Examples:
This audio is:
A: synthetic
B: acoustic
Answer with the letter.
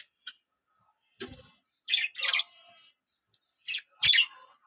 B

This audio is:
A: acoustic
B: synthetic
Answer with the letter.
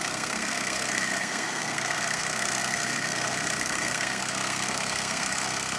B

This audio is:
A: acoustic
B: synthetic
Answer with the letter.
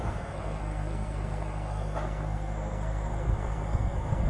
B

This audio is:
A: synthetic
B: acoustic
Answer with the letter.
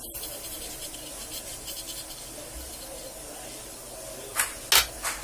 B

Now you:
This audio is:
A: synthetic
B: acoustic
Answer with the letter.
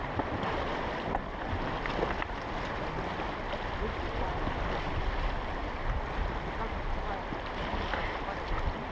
B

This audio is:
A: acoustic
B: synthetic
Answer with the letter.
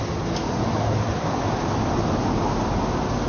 A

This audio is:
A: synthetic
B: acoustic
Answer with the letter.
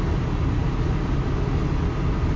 B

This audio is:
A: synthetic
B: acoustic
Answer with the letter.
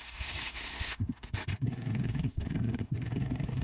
A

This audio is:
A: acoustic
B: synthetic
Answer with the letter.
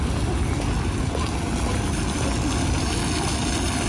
A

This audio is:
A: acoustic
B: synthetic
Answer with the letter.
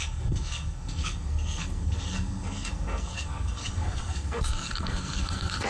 B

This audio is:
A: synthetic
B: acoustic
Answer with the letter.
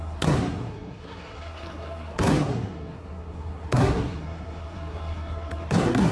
A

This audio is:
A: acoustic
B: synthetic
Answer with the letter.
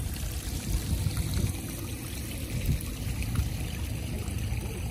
A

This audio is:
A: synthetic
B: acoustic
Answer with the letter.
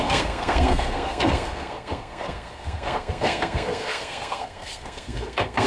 A